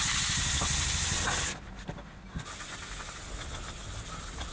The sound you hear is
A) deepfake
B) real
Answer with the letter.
B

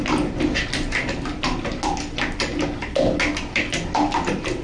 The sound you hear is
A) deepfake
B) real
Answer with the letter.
B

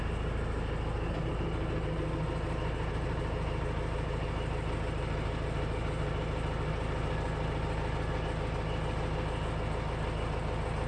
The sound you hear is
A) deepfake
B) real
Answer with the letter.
B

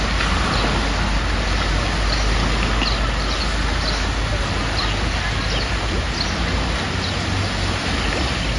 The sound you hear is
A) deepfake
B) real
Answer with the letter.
B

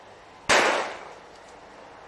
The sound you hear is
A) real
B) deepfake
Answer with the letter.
A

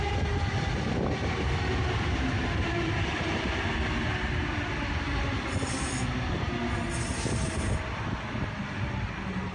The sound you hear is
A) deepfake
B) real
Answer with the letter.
B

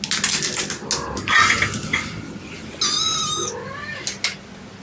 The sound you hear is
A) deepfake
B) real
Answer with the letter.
B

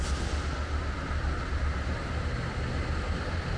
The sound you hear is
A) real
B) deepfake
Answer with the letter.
A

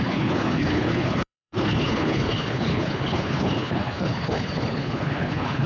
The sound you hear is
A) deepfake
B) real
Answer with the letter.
A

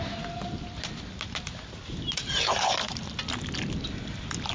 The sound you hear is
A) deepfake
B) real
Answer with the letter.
B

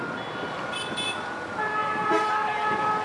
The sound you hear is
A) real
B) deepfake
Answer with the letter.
A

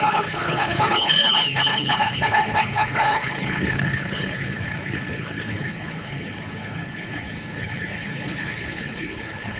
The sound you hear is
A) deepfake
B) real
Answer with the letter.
A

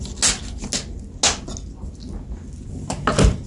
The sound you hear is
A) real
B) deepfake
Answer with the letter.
A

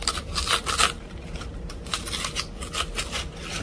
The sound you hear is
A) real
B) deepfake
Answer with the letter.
A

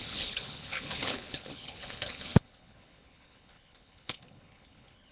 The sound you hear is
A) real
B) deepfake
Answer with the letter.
B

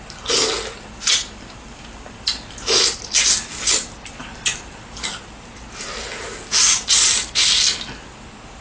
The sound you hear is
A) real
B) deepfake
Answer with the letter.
A